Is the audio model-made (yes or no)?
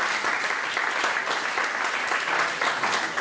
no